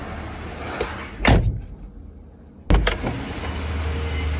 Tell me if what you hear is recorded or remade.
recorded